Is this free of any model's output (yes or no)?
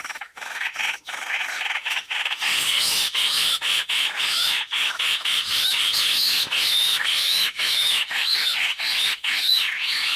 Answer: no